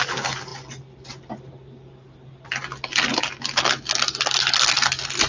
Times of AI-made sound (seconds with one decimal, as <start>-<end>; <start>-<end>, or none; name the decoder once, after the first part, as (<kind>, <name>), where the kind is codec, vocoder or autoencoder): none